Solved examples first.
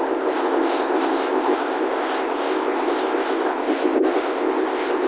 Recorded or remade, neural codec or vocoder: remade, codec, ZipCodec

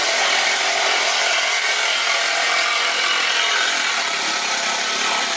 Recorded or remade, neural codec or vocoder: recorded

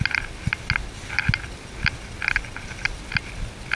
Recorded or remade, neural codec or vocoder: recorded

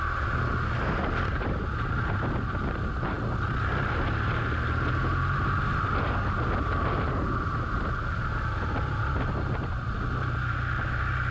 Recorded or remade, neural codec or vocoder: recorded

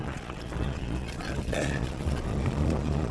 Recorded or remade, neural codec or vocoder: remade, vocoder, Vocos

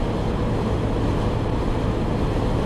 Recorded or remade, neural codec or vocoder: recorded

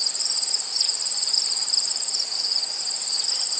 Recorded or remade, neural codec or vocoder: remade, vocoder, BigVGAN v2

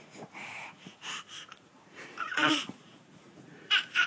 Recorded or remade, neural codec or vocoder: remade, vocoder, Vocos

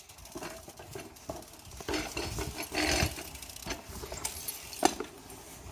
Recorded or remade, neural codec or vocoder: recorded